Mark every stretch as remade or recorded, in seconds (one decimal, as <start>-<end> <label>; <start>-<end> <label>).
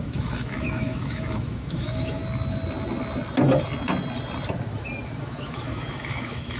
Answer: 0.0-2.2 remade; 2.2-5.2 recorded; 5.2-6.6 remade